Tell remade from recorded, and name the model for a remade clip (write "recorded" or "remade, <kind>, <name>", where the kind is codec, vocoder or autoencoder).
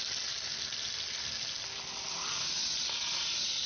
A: recorded